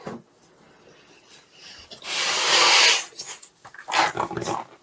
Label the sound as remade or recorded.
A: recorded